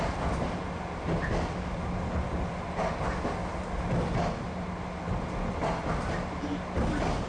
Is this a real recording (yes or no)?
yes